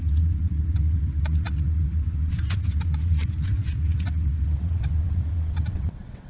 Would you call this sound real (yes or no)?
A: no